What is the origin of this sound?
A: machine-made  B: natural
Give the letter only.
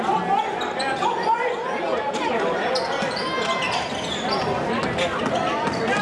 B